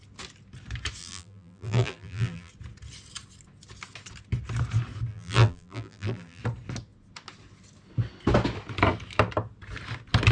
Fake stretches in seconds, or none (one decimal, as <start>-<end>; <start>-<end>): 1.0-2.5; 5.1-6.4